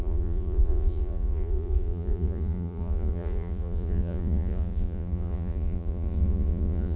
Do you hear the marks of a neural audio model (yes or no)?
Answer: yes